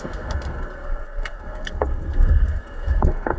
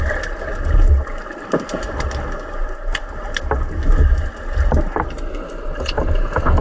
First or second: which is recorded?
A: second